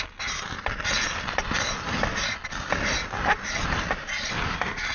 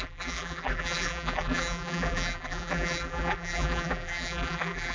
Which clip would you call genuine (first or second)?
first